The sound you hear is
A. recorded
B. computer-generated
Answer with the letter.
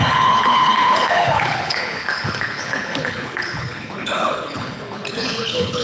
B